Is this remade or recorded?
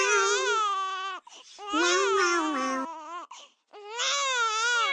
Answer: recorded